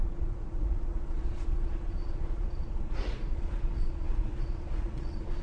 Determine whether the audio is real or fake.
fake